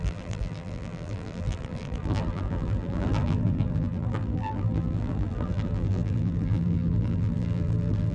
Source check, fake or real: fake